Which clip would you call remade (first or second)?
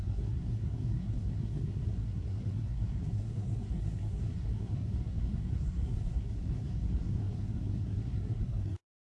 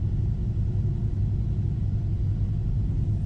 first